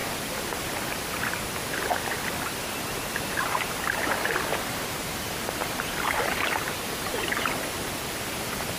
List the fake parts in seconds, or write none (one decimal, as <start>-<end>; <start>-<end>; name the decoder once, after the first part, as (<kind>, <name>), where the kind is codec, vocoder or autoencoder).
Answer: 4.5-6.9 (vocoder, BigVGAN v2)